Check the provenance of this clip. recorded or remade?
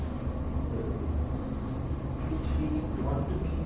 recorded